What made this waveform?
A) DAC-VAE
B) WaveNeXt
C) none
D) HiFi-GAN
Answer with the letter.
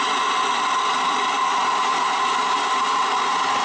C